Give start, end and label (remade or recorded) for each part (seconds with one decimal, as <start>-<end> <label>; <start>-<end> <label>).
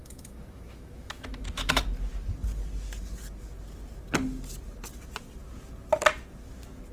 0.0-1.8 remade; 1.8-6.9 recorded